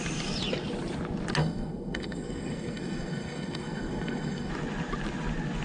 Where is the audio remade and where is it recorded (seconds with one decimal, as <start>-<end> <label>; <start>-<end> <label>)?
0.0-1.4 recorded; 1.4-4.5 remade; 4.5-5.6 recorded